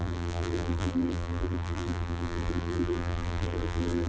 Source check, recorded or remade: remade